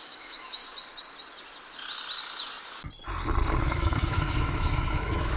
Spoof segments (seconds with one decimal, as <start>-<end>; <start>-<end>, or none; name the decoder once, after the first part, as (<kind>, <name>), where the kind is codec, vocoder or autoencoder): 0.0-0.6 (autoencoder, DAC-VAE); 3.6-5.4